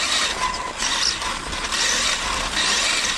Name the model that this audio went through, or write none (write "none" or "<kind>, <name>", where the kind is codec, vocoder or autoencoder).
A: none